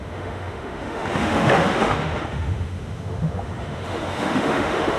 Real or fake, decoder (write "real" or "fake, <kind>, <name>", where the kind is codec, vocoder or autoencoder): fake, autoencoder, DAC-VAE